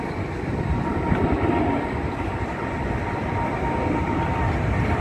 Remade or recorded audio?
recorded